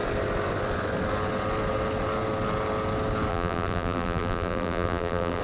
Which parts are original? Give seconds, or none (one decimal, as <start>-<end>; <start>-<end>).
0.0-3.3